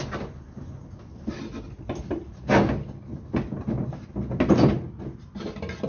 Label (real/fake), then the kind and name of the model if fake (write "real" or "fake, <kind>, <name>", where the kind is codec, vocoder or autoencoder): real